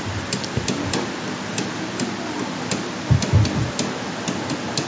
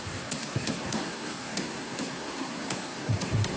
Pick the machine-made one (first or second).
second